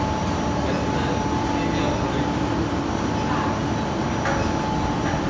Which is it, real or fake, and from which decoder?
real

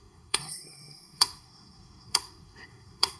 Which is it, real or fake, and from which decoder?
fake, codec, SNAC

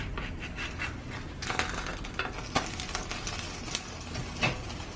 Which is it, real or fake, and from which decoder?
real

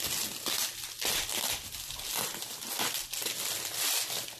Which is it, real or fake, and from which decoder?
real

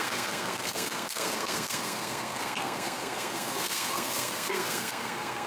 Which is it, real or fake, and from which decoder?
fake, codec, SNAC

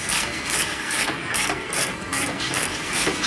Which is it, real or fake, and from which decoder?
fake, codec, SNAC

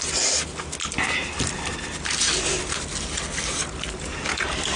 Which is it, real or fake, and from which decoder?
real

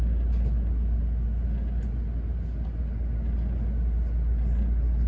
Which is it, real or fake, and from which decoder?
real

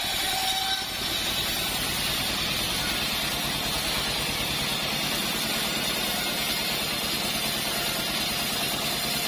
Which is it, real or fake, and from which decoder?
real